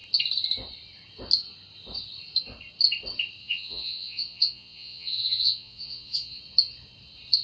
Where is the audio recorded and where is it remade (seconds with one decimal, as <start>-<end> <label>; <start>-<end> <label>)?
0.0-3.4 recorded; 3.4-6.4 remade; 6.4-7.4 recorded